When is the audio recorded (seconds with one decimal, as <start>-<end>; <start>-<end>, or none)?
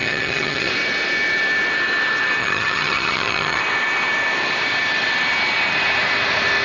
0.7-2.4; 3.6-6.6